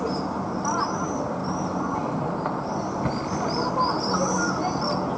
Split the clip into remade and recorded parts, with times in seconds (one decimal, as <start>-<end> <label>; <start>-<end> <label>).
0.0-5.2 recorded